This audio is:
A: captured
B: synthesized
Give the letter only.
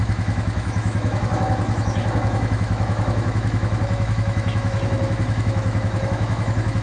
B